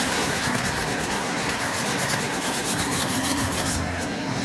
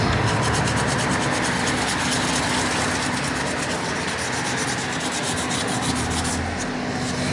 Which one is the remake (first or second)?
first